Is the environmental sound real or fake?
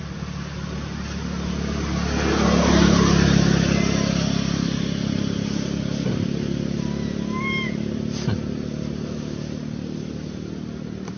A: real